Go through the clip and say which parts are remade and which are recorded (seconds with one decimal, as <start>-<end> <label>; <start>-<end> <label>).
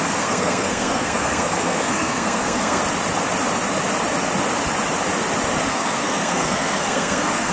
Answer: 0.0-2.8 remade; 2.8-5.7 recorded; 5.7-7.5 remade